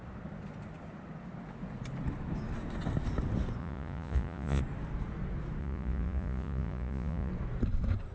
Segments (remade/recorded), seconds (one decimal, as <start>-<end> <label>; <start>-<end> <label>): 0.0-3.6 recorded; 3.6-4.6 remade; 4.6-5.6 recorded; 5.6-7.3 remade; 7.3-8.1 recorded